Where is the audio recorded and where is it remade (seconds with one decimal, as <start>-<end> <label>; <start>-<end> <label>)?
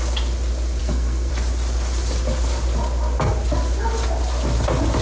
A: 0.0-0.8 recorded; 0.8-1.3 remade; 1.3-5.0 recorded